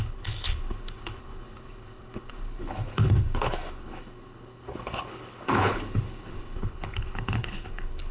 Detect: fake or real fake